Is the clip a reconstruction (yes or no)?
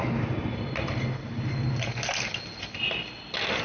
no